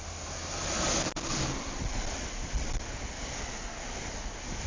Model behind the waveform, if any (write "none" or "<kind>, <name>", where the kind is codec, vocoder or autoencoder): none